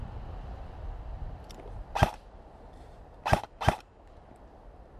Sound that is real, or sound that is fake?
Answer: fake